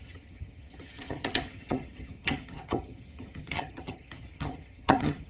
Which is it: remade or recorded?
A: remade